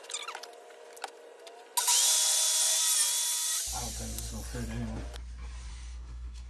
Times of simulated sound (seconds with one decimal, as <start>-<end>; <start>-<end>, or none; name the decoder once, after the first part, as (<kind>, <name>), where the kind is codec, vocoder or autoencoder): 5.7-6.5 (codec, SNAC)